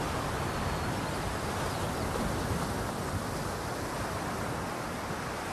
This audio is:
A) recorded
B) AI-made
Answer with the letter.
A